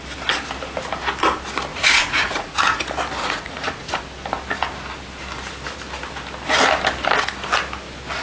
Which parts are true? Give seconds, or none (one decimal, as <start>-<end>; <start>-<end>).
0.0-1.7; 2.8-3.2; 4.0-8.2